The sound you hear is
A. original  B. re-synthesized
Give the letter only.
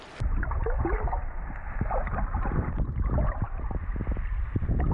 B